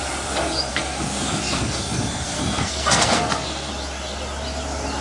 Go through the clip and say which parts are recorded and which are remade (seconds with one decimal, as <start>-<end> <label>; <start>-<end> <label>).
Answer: 0.0-0.7 recorded; 0.7-3.7 remade; 3.7-5.0 recorded